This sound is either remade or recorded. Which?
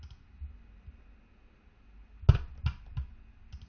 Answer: recorded